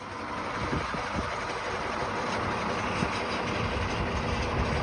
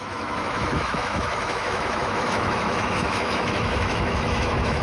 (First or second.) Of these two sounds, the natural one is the first